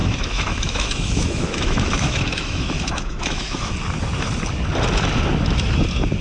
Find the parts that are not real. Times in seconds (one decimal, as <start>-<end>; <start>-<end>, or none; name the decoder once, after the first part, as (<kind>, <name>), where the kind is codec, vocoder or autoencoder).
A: 0.0-3.7 (autoencoder, DAC-VAE)